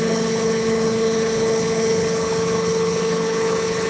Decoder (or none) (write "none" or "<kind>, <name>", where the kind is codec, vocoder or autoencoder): codec, HILCodec